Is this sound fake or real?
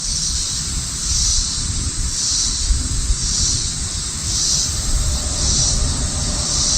real